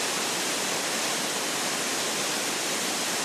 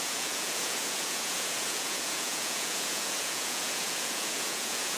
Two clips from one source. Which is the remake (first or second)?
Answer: second